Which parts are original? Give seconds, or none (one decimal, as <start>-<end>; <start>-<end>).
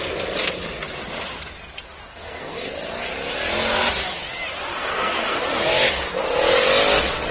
0.0-2.1; 2.7-4.7; 5.4-7.3